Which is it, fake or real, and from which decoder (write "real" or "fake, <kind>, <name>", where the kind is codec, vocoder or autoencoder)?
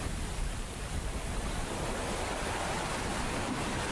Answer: fake, vocoder, BigVGAN v2